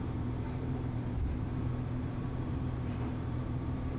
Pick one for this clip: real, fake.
fake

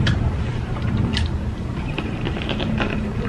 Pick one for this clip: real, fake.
fake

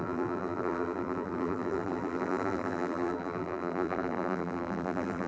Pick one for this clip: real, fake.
fake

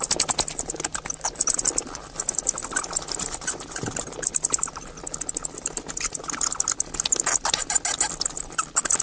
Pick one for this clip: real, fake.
real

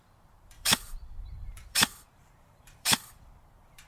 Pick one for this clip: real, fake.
fake